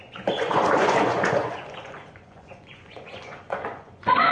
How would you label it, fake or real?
fake